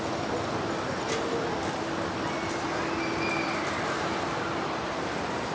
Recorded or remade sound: recorded